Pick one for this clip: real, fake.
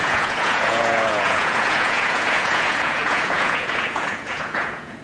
fake